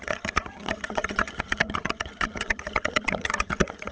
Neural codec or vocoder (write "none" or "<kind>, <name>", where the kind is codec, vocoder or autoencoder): vocoder, HiFi-GAN